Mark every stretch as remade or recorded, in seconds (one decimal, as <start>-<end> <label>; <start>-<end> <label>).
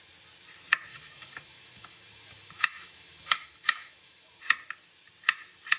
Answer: 0.0-0.9 recorded; 0.9-4.4 remade; 4.4-5.8 recorded